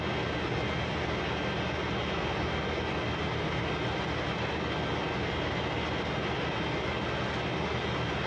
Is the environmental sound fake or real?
real